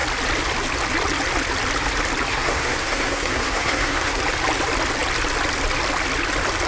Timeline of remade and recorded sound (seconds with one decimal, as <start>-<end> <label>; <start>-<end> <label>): 0.0-2.3 recorded; 2.3-4.2 remade; 4.2-6.7 recorded